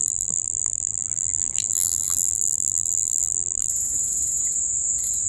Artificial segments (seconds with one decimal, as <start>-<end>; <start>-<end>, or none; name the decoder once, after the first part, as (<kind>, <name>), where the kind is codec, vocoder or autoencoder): 0.0-3.7 (vocoder, BigVGAN v2)